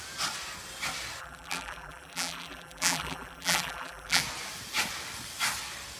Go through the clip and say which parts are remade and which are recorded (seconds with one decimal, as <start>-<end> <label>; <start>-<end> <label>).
0.0-1.2 recorded; 1.2-4.2 remade; 4.2-6.0 recorded